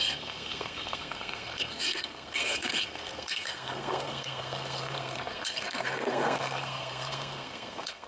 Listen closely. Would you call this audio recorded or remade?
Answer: remade